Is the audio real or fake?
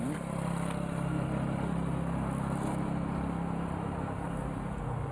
real